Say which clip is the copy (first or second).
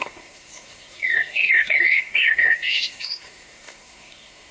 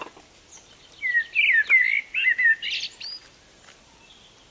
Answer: first